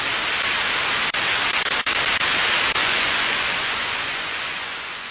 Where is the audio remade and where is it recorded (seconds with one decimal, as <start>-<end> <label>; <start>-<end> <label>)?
0.0-2.8 recorded; 2.8-5.1 remade